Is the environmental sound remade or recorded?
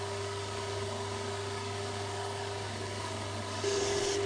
remade